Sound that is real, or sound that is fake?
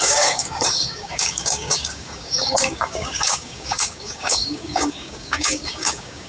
fake